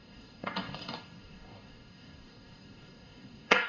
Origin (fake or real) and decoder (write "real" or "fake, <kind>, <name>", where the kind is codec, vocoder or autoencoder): fake, codec, DAC